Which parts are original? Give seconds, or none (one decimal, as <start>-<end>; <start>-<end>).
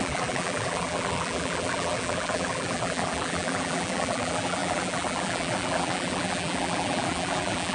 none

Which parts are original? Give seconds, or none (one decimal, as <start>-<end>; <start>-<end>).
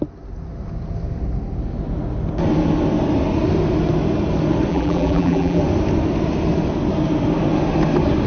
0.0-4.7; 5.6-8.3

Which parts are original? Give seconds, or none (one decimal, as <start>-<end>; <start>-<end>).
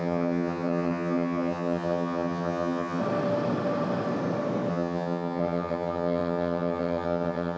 3.0-4.7